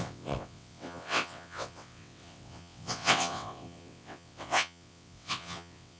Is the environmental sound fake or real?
fake